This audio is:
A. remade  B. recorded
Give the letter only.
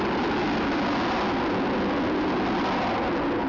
B